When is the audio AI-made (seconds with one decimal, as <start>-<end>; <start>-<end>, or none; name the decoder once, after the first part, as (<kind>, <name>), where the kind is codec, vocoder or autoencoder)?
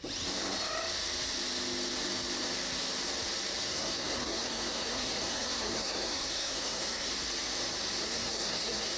3.7-7.1 (codec, SNAC); 8.0-9.0